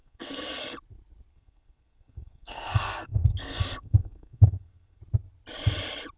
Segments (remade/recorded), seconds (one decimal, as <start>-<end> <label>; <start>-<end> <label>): 0.0-0.6 remade; 0.6-1.3 recorded; 1.3-5.0 remade; 5.0-6.2 recorded